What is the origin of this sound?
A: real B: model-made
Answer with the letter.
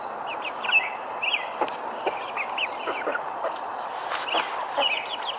A